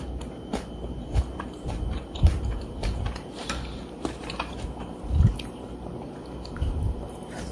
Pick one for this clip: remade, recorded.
remade